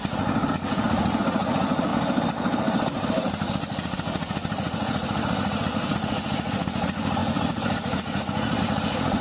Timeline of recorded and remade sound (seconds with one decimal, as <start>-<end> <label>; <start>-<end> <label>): 0.0-1.9 remade; 1.9-3.3 recorded; 3.3-9.2 remade